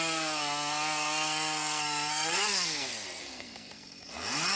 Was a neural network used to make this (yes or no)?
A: yes